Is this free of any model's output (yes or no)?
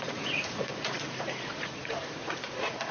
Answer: no